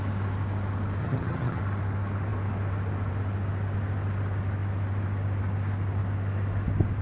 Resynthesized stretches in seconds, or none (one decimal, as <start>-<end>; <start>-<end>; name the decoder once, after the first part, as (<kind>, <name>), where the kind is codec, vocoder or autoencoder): 1.0-1.6 (vocoder, HiFi-GAN)